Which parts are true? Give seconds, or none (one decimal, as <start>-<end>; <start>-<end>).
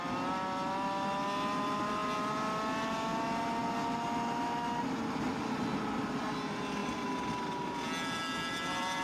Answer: 0.0-9.0